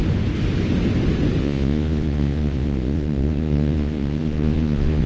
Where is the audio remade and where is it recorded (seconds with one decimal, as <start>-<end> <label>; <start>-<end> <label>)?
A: 0.0-1.4 recorded; 1.4-5.1 remade